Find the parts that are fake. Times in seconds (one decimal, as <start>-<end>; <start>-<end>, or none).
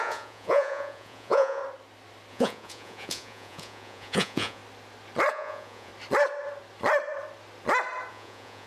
0.0-1.6; 2.3-4.6; 5.3-5.9; 8.1-8.7